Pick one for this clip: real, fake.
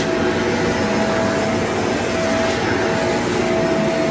real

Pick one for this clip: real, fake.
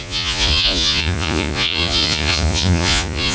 fake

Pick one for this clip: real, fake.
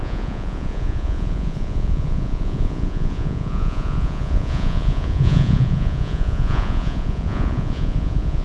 fake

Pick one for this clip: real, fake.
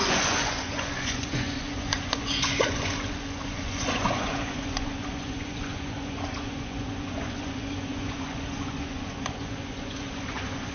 fake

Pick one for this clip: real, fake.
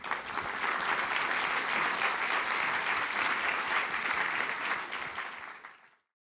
real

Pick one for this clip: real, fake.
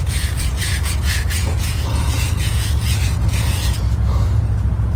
fake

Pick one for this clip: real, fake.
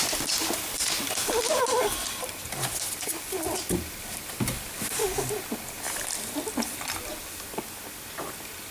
real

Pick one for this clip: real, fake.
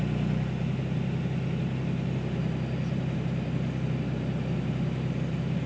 real